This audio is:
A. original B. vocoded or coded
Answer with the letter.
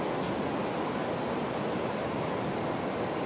A